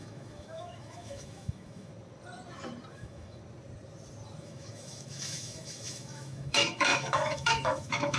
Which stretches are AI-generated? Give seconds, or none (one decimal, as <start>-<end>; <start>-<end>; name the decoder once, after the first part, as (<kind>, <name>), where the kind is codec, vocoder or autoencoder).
0.0-1.9 (autoencoder, DAC-VAE); 2.9-3.4; 4.4-8.2